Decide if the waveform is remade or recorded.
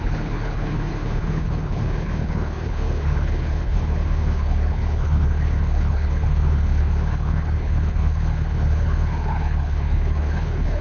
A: remade